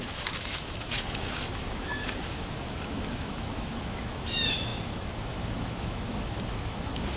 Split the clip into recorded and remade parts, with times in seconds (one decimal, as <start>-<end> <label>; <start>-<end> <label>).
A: 0.0-7.2 remade